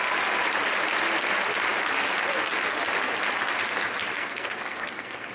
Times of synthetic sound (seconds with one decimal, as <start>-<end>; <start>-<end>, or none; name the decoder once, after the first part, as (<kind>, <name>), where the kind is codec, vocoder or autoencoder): 4.1-5.3 (codec, SNAC)